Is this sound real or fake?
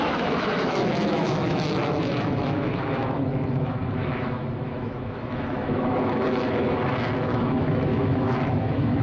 fake